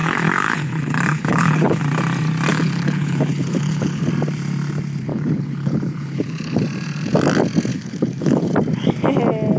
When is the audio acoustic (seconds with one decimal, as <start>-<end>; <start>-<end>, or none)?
1.8-2.5; 4.1-5.1; 6.6-7.7; 8.5-9.6